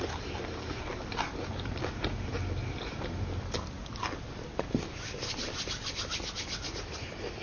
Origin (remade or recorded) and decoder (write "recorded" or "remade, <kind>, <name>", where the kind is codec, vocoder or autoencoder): recorded